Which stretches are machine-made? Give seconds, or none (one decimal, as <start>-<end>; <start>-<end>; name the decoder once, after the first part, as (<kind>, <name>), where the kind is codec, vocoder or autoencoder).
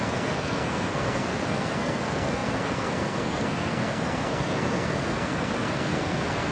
0.0-6.5 (codec, SNAC)